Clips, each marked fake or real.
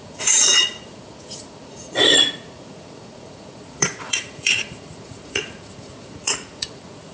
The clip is fake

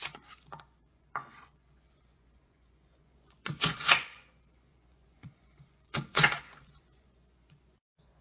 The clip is fake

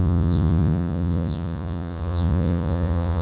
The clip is fake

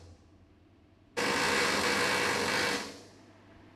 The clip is real